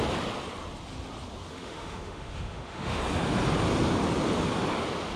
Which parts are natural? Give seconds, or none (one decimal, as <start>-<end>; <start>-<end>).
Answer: 0.0-1.5; 3.0-5.2